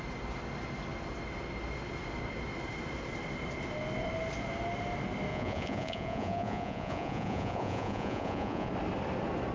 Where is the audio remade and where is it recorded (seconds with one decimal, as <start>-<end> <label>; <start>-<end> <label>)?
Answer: 0.0-5.3 recorded; 5.3-8.7 remade; 8.7-9.5 recorded